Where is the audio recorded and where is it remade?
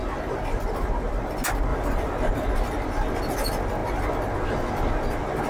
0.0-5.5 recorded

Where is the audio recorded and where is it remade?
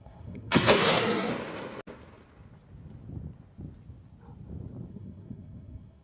0.0-1.3 remade; 1.3-4.9 recorded; 4.9-6.0 remade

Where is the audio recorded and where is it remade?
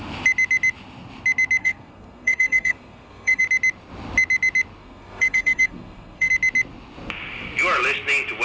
0.0-1.6 recorded; 1.6-3.4 remade; 3.4-4.8 recorded; 4.8-6.3 remade; 6.3-8.4 recorded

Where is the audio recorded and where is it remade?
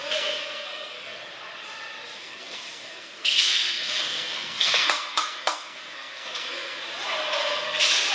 0.0-1.3 remade; 1.3-2.2 recorded; 2.2-6.8 remade; 6.8-7.4 recorded; 7.4-8.1 remade